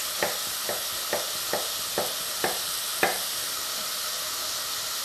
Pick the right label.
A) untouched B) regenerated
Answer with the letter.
A